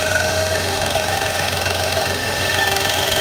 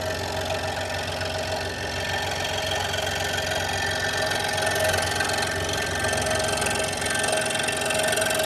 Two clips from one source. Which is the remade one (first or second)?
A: first